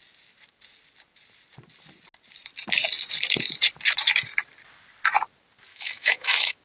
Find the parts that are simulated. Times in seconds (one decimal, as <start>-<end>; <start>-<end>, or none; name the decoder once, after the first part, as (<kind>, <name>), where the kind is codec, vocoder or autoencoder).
5.7-6.6 (autoencoder, DAC-VAE)